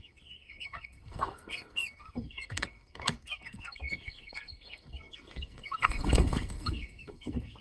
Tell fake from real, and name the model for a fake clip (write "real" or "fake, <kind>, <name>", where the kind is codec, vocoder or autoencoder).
fake, codec, SNAC